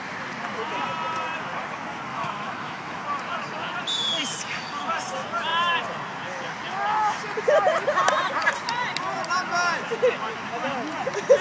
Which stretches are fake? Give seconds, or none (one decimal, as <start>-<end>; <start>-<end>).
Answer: 2.1-3.0